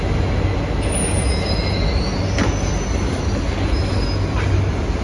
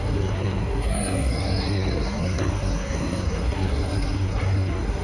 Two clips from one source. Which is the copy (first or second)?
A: second